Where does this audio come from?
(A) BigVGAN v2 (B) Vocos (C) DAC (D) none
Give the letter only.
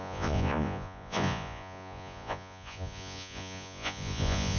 B